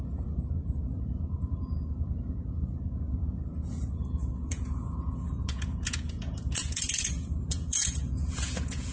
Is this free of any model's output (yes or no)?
no